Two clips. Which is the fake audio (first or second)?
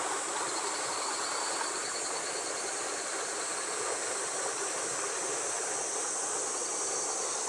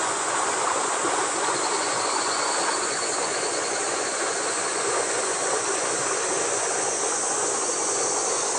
second